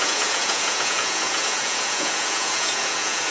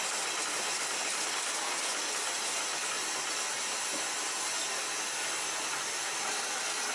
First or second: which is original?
second